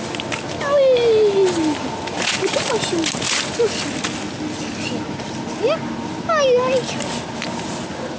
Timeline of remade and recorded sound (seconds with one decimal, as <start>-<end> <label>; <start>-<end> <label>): 0.0-8.2 recorded